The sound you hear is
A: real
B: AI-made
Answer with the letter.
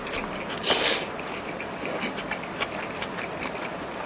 A